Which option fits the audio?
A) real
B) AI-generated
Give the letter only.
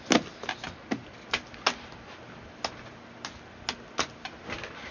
A